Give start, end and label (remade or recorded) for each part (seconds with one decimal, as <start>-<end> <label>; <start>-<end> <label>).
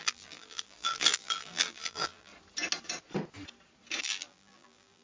0.0-2.3 remade; 2.3-4.0 recorded; 4.0-5.0 remade